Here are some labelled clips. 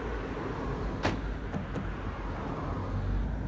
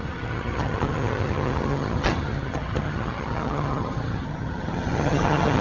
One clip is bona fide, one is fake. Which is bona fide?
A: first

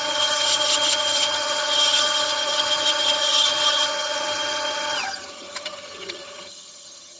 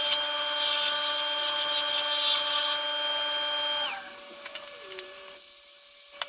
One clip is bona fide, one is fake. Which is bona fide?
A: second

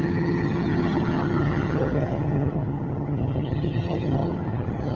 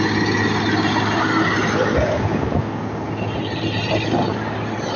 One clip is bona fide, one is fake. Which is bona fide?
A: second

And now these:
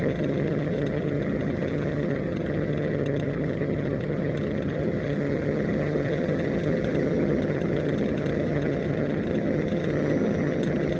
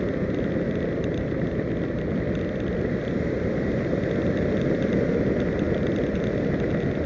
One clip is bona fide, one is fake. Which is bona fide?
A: second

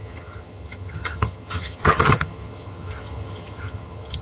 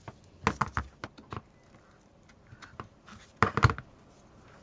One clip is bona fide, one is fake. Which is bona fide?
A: second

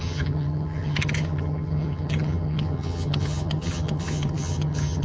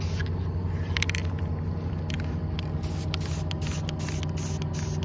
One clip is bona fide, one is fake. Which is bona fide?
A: second